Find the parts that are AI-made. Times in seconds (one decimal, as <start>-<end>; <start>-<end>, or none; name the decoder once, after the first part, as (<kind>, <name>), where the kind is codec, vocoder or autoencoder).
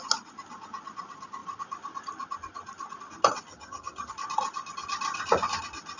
3.5-4.1 (vocoder, HiFi-GAN)